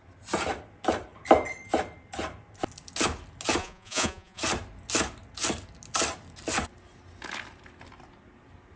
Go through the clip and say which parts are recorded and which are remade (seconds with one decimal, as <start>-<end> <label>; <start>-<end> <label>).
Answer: 0.0-3.6 recorded; 3.6-4.4 remade; 4.4-8.8 recorded